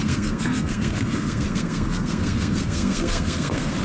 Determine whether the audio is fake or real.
fake